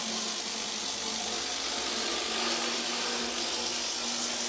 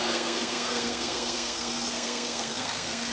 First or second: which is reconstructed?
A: second